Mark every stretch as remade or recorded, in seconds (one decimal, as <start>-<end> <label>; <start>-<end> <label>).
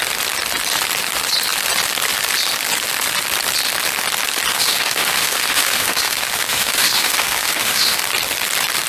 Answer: 0.0-4.5 recorded; 4.5-8.0 remade; 8.0-8.9 recorded